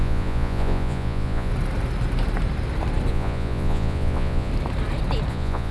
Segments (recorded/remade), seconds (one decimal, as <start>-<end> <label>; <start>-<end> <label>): 0.0-1.5 remade; 1.5-3.1 recorded; 3.1-4.5 remade; 4.5-5.3 recorded; 5.3-5.7 remade